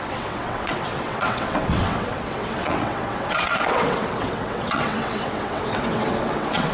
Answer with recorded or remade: remade